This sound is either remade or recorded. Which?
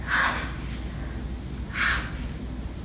recorded